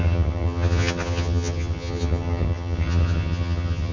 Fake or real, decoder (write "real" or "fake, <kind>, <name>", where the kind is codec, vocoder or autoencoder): fake, vocoder, HiFi-GAN